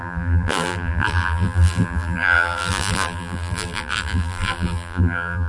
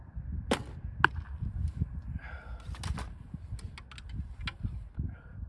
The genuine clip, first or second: second